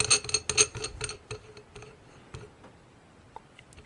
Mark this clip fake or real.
real